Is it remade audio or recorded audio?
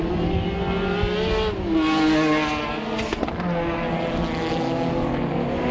recorded